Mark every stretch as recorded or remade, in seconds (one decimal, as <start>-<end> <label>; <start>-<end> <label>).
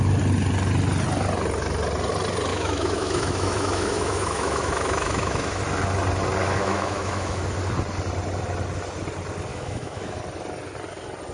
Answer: 0.0-2.5 recorded; 2.5-5.6 remade; 5.6-6.4 recorded; 6.4-7.4 remade; 7.4-9.5 recorded; 9.5-10.2 remade; 10.2-11.3 recorded